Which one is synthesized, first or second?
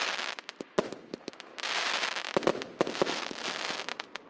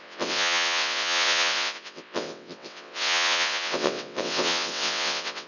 second